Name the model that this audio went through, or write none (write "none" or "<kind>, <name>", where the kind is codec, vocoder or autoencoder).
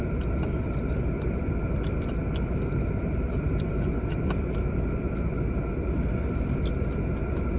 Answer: none